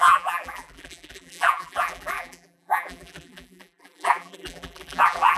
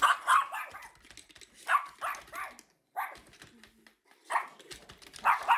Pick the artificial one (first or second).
first